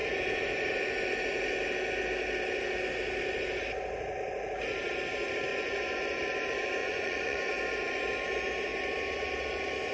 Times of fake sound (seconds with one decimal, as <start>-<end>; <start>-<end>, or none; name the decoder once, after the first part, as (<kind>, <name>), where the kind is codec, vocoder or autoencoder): 5.5-6.2 (vocoder, Vocos); 6.8-7.5